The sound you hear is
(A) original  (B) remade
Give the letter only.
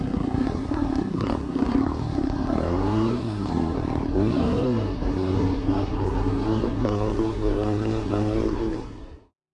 B